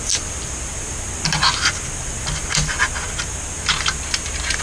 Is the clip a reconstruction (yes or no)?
no